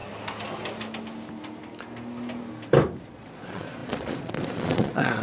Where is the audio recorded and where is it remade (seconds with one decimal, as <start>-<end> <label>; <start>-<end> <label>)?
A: 0.0-3.1 recorded; 3.1-5.2 remade